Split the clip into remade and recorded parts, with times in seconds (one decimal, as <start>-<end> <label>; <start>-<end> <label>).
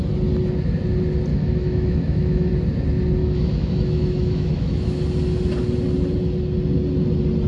0.0-1.3 recorded; 1.3-2.5 remade; 2.5-3.2 recorded; 3.2-5.0 remade; 5.0-7.5 recorded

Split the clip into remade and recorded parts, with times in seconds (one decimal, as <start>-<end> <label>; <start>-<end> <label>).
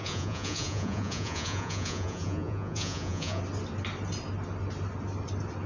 0.0-3.4 remade; 3.4-5.7 recorded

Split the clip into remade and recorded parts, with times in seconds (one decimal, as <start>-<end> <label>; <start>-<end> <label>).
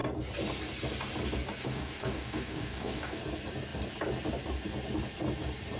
0.0-1.6 recorded; 1.6-3.2 remade; 3.2-5.8 recorded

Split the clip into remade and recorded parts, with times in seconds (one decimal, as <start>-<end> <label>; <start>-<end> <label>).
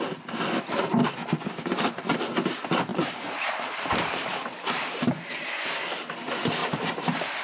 0.0-2.9 recorded; 2.9-5.1 remade; 5.1-6.6 recorded; 6.6-7.4 remade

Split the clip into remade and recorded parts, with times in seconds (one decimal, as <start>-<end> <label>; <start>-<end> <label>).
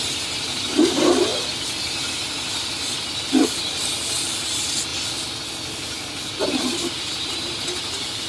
0.0-1.3 remade; 1.3-4.1 recorded; 4.1-4.9 remade; 4.9-6.6 recorded; 6.6-8.3 remade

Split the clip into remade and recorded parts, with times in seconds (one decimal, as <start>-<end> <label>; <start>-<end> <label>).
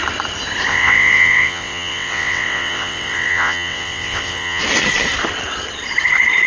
0.0-0.7 recorded; 0.7-4.6 remade; 4.6-6.5 recorded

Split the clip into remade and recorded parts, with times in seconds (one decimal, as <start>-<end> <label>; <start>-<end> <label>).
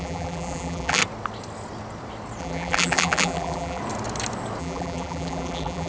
0.0-1.0 remade; 1.0-2.4 recorded; 2.4-3.8 remade; 3.8-4.6 recorded; 4.6-5.9 remade